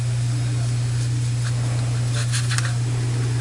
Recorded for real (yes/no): yes